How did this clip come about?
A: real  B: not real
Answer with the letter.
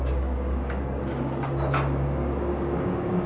B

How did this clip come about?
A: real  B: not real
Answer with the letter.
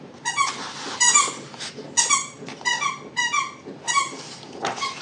A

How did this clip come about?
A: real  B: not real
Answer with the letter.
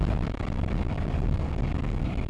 B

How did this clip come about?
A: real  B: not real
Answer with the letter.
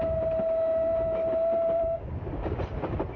A